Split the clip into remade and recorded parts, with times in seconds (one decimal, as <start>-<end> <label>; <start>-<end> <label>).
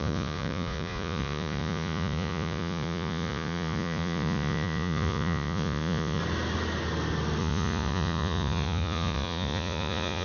0.0-6.2 remade; 6.2-7.4 recorded; 7.4-10.2 remade